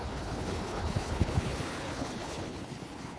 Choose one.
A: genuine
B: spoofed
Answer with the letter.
B